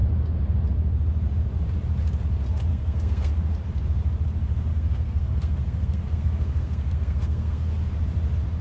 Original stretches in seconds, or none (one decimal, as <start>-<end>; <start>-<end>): 0.0-2.7; 3.3-4.7; 7.7-8.6